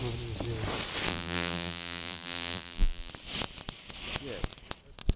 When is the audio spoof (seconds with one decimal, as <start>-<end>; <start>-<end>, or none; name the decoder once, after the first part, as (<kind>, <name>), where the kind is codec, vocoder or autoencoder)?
1.1-3.1 (vocoder, BigVGAN v2)